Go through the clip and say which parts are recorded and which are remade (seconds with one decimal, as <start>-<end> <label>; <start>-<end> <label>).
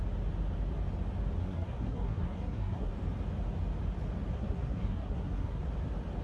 0.0-1.4 recorded; 1.4-2.9 remade; 2.9-4.3 recorded; 4.3-5.6 remade; 5.6-6.2 recorded